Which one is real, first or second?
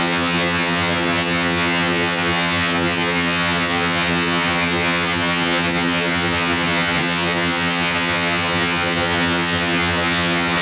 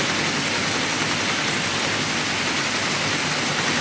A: second